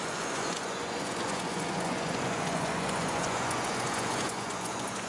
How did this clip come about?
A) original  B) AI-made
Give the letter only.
B